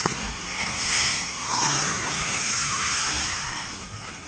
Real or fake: fake